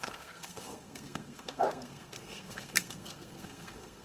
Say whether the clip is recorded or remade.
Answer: remade